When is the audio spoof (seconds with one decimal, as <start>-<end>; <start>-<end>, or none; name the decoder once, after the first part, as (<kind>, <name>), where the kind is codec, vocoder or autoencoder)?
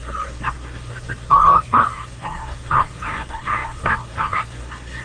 0.0-5.0 (codec, SNAC)